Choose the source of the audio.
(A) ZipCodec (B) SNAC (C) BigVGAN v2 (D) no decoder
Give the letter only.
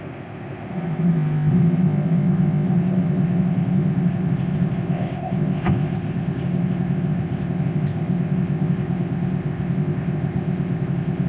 A